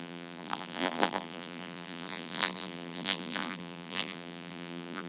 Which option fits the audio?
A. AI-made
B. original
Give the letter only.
A